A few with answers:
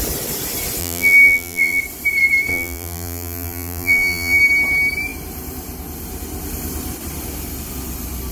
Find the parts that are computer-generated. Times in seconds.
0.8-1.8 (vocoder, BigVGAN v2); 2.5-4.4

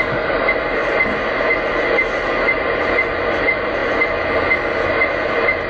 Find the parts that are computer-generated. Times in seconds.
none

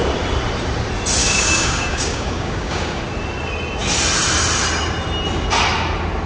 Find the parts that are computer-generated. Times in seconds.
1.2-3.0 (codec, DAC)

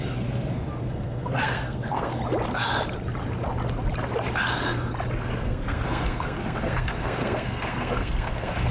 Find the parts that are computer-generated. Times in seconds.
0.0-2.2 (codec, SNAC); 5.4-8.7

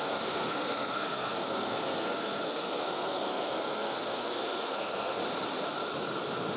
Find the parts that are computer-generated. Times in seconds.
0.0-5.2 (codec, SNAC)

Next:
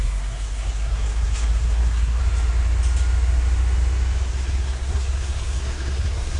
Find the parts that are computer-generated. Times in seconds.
0.0-2.2 (codec, SNAC); 4.3-6.4

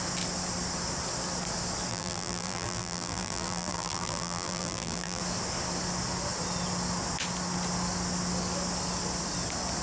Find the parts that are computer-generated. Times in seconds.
1.9-5.2 (vocoder, BigVGAN v2)

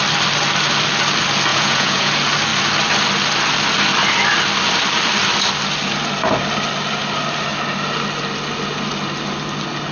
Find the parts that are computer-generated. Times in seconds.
1.5-2.1 (vocoder, Vocos)